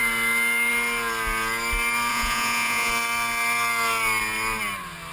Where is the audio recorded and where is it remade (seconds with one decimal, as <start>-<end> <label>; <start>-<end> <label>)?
0.0-2.1 recorded; 2.1-2.9 remade; 2.9-5.1 recorded